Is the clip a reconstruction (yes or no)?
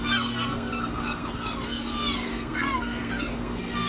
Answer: yes